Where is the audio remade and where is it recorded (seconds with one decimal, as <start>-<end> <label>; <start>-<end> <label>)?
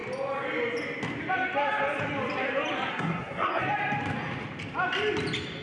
0.0-2.9 recorded; 2.9-3.6 remade; 3.6-5.6 recorded